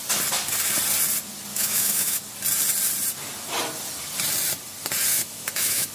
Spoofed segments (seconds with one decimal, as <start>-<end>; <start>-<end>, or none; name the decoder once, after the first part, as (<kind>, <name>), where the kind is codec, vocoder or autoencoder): 1.5-2.2 (autoencoder, DAC-VAE); 5.1-5.9